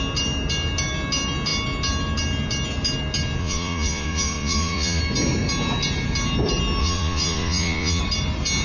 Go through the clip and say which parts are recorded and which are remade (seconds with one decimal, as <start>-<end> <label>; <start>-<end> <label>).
0.0-3.4 recorded; 3.4-5.0 remade; 5.0-6.8 recorded; 6.8-8.0 remade; 8.0-8.6 recorded